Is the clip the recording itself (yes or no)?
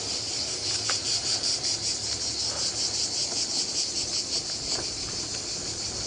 yes